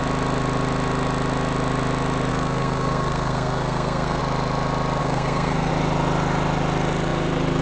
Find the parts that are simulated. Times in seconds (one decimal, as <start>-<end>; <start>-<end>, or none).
2.3-4.2; 5.0-5.7